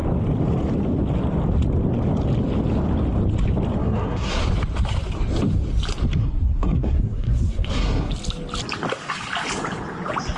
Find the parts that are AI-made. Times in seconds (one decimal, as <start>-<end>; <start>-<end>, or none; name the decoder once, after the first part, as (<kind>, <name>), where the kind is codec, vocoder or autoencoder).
3.8-4.4 (codec, SNAC); 6.2-8.1